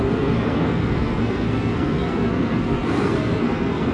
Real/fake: fake